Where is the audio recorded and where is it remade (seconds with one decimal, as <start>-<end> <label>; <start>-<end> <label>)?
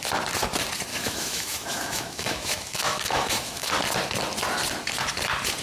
0.0-0.9 recorded; 0.9-3.7 remade; 3.7-5.6 recorded